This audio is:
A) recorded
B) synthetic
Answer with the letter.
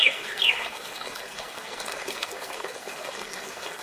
B